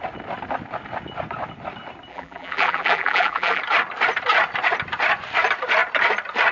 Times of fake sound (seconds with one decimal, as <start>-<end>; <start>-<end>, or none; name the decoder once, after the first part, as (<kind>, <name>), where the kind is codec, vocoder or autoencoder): 2.1-3.6 (vocoder, BigVGAN v2)